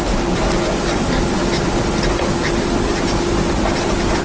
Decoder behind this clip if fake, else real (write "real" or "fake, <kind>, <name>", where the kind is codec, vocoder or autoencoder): real